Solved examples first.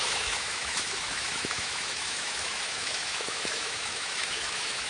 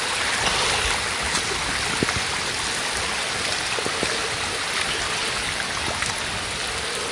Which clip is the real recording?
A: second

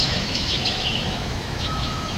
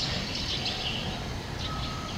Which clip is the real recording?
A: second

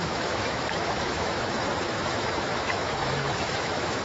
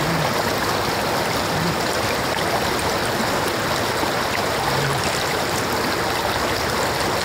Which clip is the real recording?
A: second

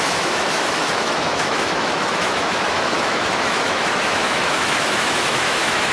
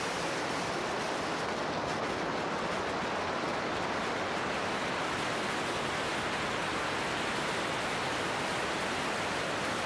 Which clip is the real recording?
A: second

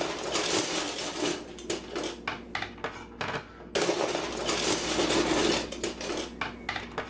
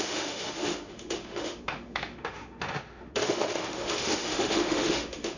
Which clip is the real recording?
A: first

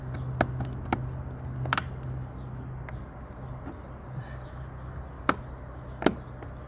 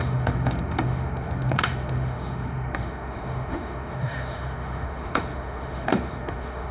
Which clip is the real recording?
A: first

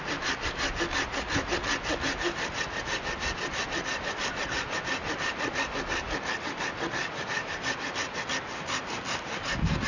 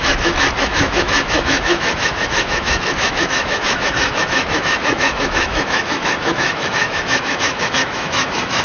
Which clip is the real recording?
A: first